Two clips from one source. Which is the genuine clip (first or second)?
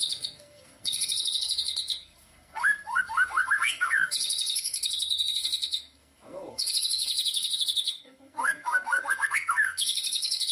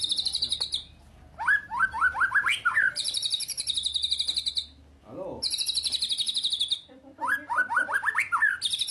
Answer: second